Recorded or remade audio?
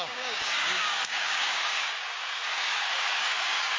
remade